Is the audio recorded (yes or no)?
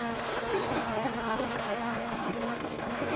no